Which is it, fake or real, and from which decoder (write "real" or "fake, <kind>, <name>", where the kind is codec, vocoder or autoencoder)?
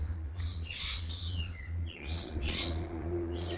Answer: fake, vocoder, Vocos